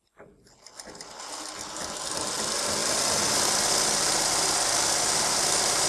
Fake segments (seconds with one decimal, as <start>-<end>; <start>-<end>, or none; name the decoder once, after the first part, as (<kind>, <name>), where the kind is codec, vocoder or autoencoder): none